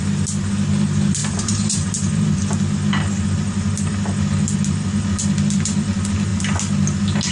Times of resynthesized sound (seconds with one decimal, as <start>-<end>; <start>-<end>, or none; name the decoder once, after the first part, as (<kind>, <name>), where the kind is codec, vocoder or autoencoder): 1.2-2.4 (vocoder, BigVGAN v2)